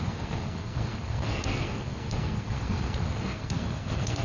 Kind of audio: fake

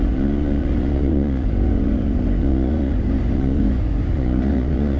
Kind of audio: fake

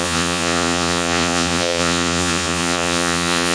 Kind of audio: fake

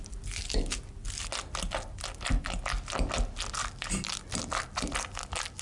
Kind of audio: real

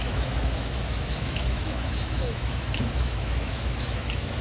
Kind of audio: fake